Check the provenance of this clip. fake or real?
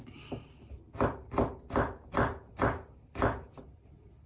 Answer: real